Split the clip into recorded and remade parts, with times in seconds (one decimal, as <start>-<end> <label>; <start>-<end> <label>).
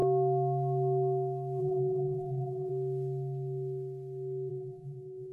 0.0-1.6 recorded; 1.6-2.7 remade; 2.7-4.5 recorded; 4.5-5.3 remade